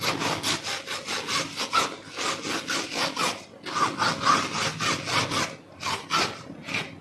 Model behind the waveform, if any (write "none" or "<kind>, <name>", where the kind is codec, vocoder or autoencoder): none